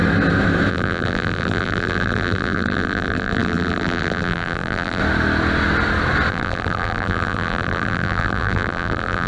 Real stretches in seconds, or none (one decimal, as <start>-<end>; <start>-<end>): 0.0-0.7; 5.0-6.3